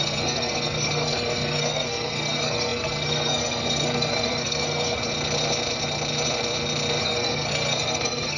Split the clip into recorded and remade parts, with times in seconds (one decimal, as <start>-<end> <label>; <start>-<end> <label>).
0.0-5.0 remade; 5.0-7.0 recorded; 7.0-8.4 remade